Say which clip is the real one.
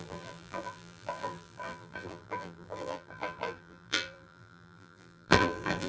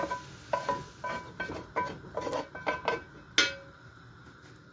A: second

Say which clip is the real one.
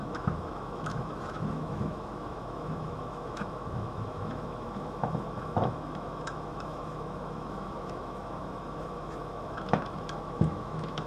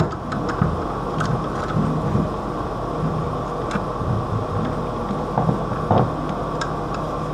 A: second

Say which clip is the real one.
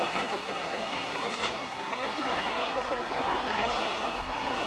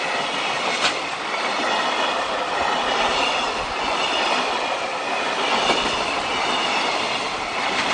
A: second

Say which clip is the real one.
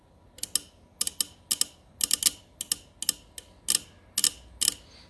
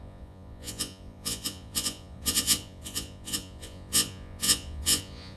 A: first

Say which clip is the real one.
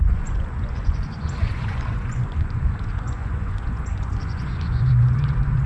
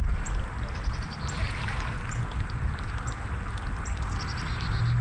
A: second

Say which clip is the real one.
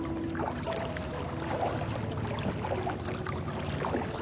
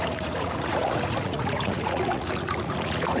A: first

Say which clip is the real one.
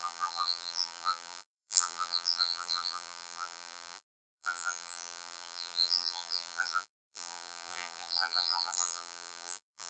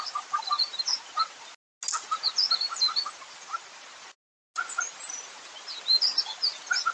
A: second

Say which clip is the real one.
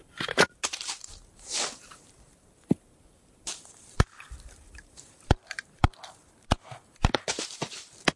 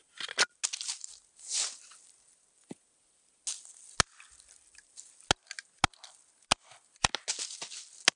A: second